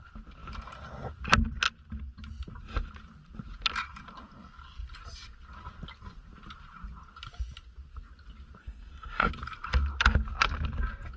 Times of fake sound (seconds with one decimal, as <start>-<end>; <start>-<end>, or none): 8.6-9.3